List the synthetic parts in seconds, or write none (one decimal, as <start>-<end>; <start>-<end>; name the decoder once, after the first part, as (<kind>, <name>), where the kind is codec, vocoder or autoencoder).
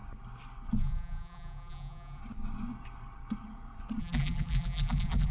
0.8-2.2 (vocoder, BigVGAN v2); 4.0-5.3